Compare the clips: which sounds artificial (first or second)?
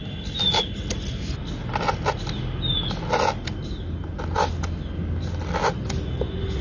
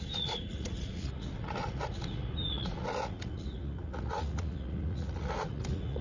second